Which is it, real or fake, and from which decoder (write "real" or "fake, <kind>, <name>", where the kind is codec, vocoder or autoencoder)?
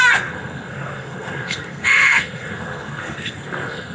fake, codec, SNAC